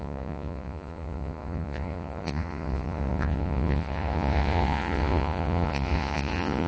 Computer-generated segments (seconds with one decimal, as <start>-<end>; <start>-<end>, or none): 0.0-6.7